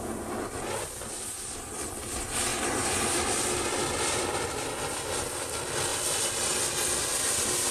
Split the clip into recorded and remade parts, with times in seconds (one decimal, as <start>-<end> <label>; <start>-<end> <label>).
0.0-2.5 recorded; 2.5-4.4 remade; 4.4-5.9 recorded; 5.9-6.6 remade; 6.6-7.7 recorded